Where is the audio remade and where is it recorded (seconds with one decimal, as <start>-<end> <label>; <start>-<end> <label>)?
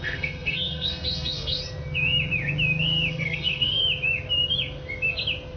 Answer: 0.0-1.6 remade; 1.6-3.1 recorded; 3.1-3.8 remade; 3.8-5.6 recorded